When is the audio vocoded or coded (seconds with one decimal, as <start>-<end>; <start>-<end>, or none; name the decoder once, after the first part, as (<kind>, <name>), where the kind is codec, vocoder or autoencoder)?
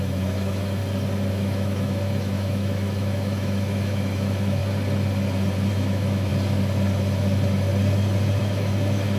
0.0-0.8 (autoencoder, DAC-VAE); 1.3-4.6; 5.7-6.3; 8.4-9.2